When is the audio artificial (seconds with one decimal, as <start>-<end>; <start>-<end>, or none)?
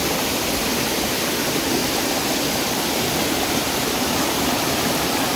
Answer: none